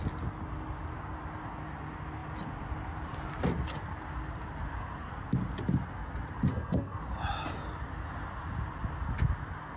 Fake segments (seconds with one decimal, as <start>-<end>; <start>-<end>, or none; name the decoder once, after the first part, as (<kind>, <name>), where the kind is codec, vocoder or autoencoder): 6.5-7.0 (codec, SNAC)